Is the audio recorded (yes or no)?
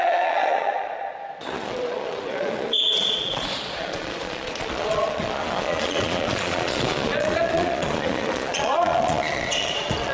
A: no